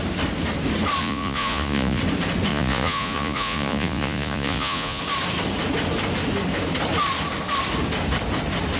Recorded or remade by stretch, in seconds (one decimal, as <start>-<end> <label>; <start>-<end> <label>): 0.0-1.0 recorded; 1.0-2.0 remade; 2.0-2.5 recorded; 2.5-5.0 remade; 5.0-8.8 recorded